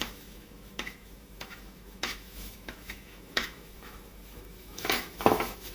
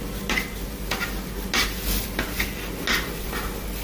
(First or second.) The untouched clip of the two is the second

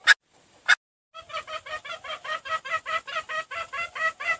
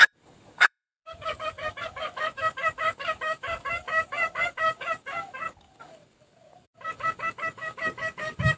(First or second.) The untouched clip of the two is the first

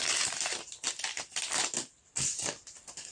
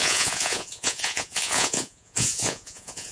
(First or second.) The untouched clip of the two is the first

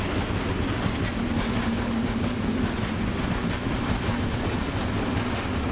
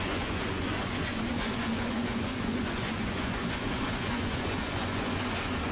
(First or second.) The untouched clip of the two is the first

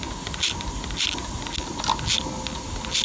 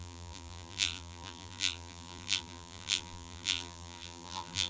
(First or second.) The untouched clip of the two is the first